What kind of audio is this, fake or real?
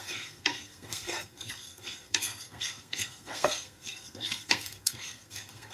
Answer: fake